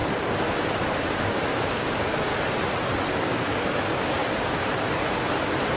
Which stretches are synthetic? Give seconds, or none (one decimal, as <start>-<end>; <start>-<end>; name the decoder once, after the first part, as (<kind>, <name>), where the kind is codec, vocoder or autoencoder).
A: 1.2-2.3 (codec, DAC); 3.2-4.2